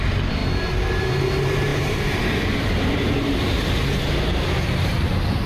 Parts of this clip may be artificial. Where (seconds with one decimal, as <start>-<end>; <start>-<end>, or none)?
0.0-0.4; 1.0-5.5